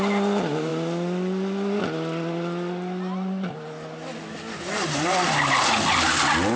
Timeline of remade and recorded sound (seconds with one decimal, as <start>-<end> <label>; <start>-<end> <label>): 0.0-6.6 recorded